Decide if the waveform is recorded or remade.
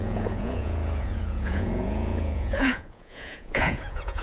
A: remade